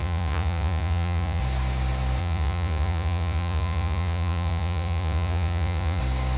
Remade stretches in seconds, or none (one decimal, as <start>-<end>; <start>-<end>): 0.0-1.4; 2.2-6.0

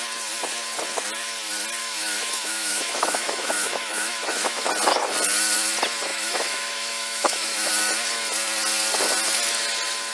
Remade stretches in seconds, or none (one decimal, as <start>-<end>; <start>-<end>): 1.8-4.7; 6.1-7.7

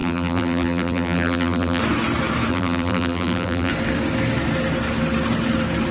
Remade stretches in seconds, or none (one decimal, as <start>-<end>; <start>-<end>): 0.0-1.8; 2.5-3.7